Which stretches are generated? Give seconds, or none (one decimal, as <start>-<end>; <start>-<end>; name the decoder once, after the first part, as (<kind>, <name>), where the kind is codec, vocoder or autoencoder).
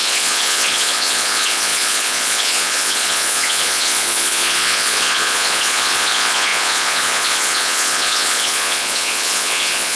0.0-10.0 (vocoder, Vocos)